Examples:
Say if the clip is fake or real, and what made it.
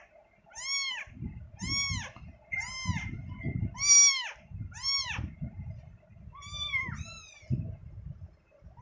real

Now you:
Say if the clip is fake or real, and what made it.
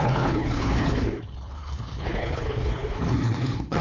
fake, codec, HILCodec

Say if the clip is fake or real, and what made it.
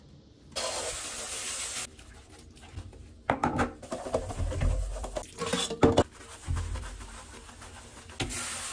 real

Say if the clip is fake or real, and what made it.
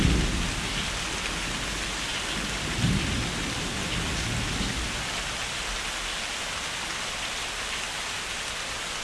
real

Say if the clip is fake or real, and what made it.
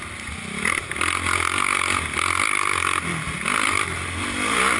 real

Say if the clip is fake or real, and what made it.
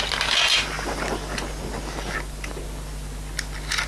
real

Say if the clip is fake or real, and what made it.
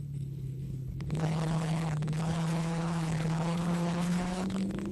fake, codec, HILCodec